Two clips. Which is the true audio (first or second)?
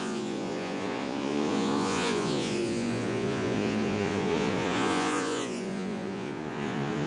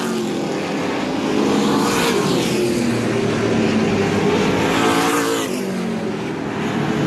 second